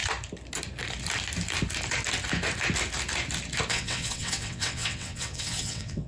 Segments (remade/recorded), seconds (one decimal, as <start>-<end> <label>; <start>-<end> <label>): 0.0-3.7 recorded; 3.7-6.1 remade